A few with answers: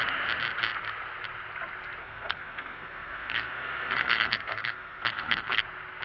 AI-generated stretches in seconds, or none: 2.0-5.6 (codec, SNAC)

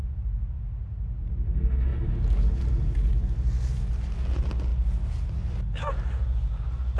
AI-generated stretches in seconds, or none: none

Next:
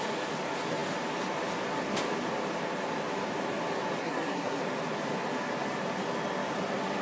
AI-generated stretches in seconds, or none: 4.0-4.6 (codec, SNAC)

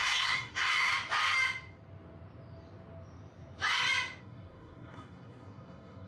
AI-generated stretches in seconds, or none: 0.0-0.9 (codec, SNAC); 4.2-6.1

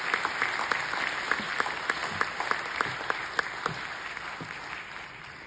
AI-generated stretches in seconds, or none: none

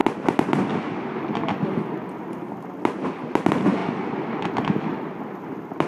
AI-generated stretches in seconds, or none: none

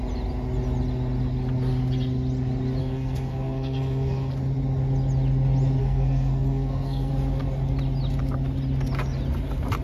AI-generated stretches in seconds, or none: 2.8-4.3 (codec, SNAC); 5.8-7.1

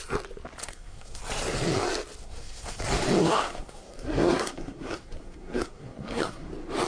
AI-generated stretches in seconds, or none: 0.6-1.2 (codec, SNAC); 2.2-2.8; 3.2-6.5